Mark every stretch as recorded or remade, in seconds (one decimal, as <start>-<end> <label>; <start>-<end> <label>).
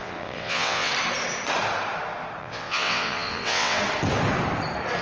0.0-0.9 remade; 0.9-2.4 recorded; 2.4-3.8 remade; 3.8-5.0 recorded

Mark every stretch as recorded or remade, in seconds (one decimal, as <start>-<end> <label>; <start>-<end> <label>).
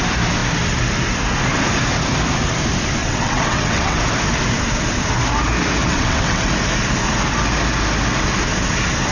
0.0-3.0 recorded; 3.0-4.0 remade; 4.0-5.8 recorded; 5.8-6.5 remade; 6.5-9.1 recorded